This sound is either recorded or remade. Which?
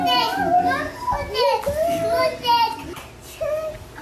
recorded